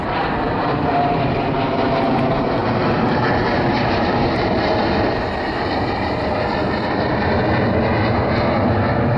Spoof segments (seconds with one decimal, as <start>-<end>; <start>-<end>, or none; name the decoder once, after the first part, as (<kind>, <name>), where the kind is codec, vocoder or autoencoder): 0.0-7.4 (vocoder, BigVGAN v2)

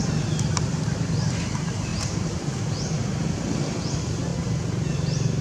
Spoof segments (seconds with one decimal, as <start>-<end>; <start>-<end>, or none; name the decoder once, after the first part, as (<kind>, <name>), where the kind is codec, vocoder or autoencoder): 1.9-2.5 (vocoder, BigVGAN v2)

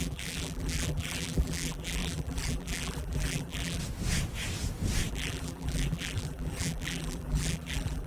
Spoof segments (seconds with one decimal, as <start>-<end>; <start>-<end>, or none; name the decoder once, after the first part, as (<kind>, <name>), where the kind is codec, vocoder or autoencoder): 0.0-3.8 (vocoder, BigVGAN v2); 5.1-8.1

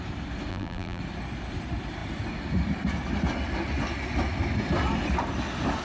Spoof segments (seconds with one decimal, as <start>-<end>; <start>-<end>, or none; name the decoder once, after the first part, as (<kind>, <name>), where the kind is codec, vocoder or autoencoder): 0.5-1.0 (vocoder, BigVGAN v2)

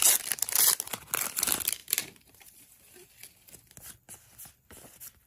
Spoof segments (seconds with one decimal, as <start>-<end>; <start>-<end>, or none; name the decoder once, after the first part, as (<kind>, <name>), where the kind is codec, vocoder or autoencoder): 1.8-3.1 (vocoder, BigVGAN v2)

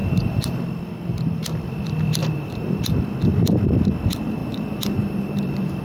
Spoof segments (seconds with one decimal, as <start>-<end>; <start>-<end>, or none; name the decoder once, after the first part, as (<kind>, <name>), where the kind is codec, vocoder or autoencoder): 0.0-0.6 (vocoder, BigVGAN v2); 2.2-2.8; 4.4-5.8

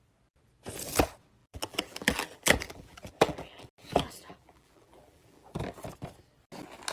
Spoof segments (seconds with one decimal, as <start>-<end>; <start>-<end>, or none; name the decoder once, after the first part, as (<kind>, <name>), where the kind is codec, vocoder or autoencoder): 1.4-5.5 (vocoder, BigVGAN v2)